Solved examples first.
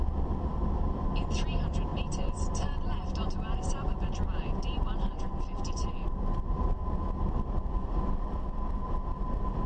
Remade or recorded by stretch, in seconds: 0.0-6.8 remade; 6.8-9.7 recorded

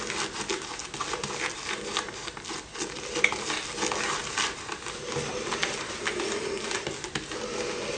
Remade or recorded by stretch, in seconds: 0.0-8.0 recorded

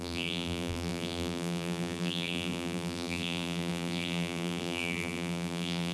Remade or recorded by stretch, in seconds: 0.0-5.9 remade